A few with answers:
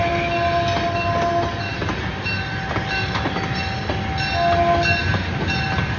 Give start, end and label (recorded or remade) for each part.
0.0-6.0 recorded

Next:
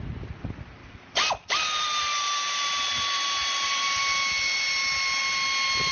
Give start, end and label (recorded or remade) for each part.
0.0-0.8 recorded; 0.8-2.0 remade; 2.0-5.9 recorded

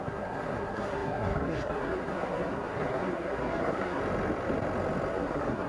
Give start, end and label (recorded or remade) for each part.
0.0-4.0 remade; 4.0-5.1 recorded; 5.1-5.7 remade

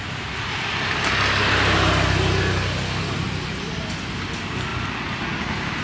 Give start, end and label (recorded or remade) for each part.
0.0-5.8 recorded

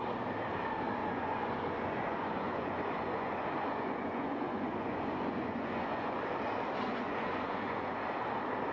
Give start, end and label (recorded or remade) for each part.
0.0-1.0 recorded; 1.0-6.2 remade; 6.2-6.9 recorded; 6.9-8.0 remade; 8.0-8.7 recorded

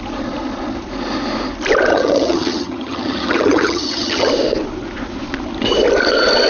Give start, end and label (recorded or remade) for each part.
0.0-1.9 recorded; 1.9-4.3 remade; 4.3-6.5 recorded

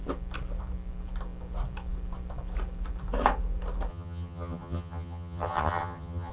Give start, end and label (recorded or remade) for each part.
0.0-3.9 recorded; 3.9-6.3 remade